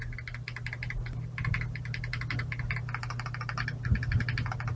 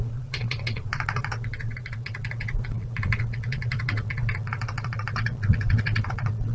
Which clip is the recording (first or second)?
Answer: first